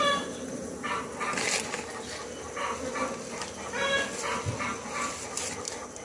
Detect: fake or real real